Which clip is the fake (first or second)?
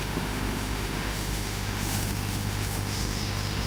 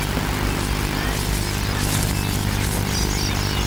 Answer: first